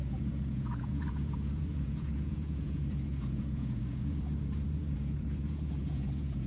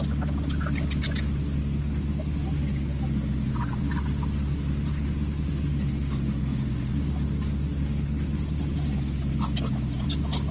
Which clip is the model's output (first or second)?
first